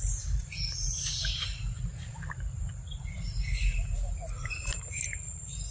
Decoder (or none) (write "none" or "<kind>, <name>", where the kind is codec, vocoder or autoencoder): vocoder, BigVGAN v2